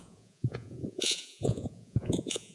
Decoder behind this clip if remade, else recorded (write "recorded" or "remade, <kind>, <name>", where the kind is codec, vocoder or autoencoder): remade, vocoder, Vocos